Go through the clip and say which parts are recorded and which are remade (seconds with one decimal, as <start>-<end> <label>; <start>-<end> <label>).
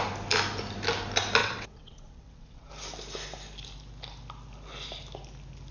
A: 0.0-1.4 recorded; 1.4-2.7 remade; 2.7-5.7 recorded